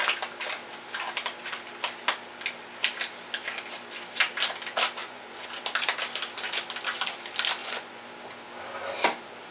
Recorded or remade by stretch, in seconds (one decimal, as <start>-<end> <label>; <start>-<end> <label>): 0.0-5.0 recorded; 5.0-5.6 remade; 5.6-7.6 recorded; 7.6-8.1 remade; 8.1-9.5 recorded